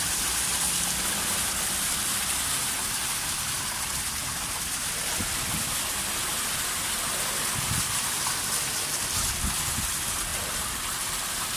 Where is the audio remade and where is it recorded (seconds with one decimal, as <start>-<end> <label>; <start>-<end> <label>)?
0.0-11.6 recorded